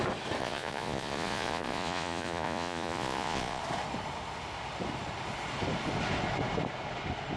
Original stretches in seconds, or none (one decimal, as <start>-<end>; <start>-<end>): 0.0-0.4; 3.6-7.4